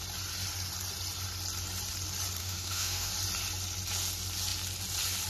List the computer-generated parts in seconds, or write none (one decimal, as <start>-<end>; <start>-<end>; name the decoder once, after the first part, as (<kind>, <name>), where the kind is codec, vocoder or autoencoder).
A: 2.4-3.1 (autoencoder, DAC-VAE)